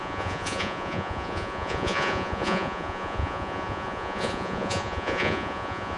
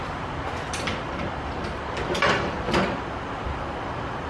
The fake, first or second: first